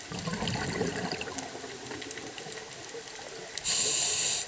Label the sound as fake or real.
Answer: real